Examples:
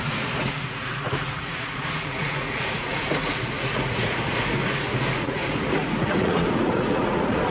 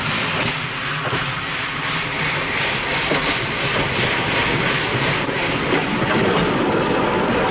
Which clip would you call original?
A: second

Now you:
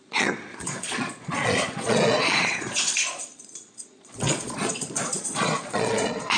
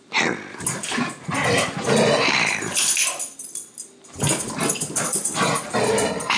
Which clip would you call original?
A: second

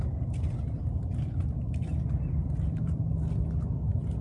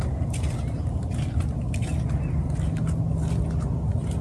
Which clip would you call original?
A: second